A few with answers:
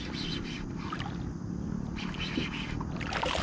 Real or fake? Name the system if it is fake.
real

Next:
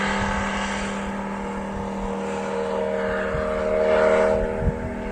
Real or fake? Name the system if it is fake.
real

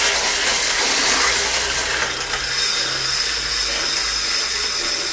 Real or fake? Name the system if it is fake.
real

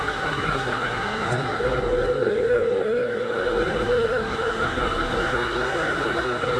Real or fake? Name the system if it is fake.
fake, codec, SNAC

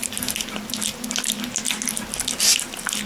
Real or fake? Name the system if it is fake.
real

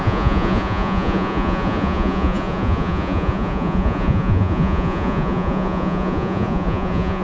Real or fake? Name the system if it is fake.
fake, vocoder, Vocos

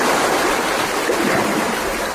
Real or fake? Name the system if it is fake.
fake, vocoder, BigVGAN v2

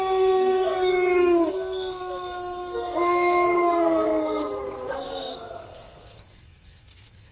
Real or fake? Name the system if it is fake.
fake, codec, SNAC